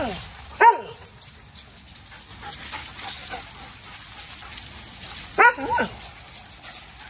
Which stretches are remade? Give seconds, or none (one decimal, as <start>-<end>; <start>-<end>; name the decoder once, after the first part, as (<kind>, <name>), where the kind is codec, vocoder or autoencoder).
none